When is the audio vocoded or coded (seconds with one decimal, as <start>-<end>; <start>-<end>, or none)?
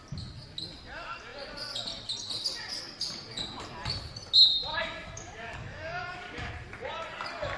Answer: 4.7-6.5